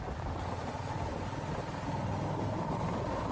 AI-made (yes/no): no